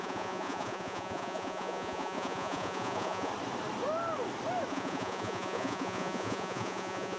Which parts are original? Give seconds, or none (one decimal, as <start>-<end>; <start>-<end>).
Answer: 3.3-4.7